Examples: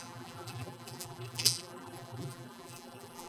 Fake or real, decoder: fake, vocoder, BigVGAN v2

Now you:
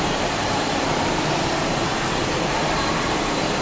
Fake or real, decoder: fake, vocoder, BigVGAN v2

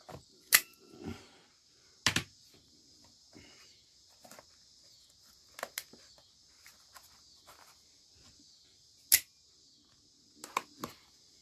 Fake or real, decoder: real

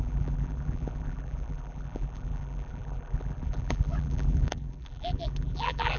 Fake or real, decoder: fake, vocoder, BigVGAN v2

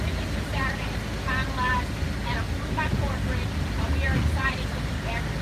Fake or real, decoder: real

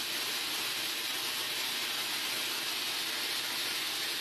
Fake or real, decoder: real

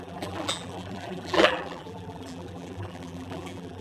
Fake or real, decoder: fake, vocoder, BigVGAN v2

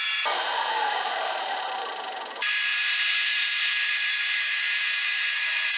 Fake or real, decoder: fake, vocoder, BigVGAN v2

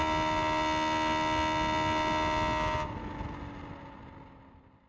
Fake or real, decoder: real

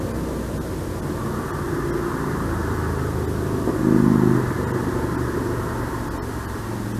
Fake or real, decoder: real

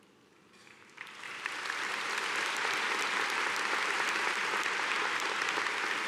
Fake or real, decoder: fake, vocoder, BigVGAN v2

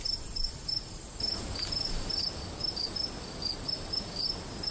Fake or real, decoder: real